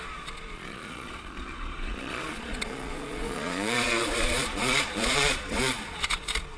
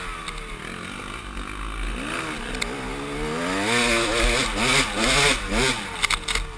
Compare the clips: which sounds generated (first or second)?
first